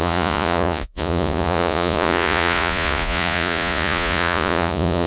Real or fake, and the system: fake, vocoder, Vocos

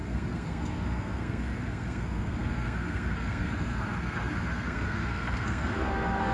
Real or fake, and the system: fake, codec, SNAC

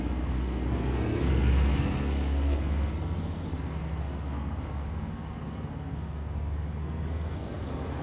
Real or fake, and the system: fake, codec, SNAC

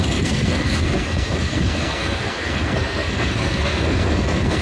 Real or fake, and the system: fake, codec, SNAC